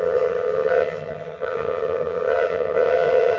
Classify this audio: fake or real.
fake